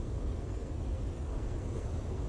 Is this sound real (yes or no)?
no